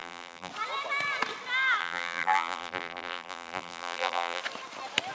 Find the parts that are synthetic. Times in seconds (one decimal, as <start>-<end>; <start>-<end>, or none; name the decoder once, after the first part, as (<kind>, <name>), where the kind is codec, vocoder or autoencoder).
0.0-0.5 (vocoder, BigVGAN v2); 1.8-4.4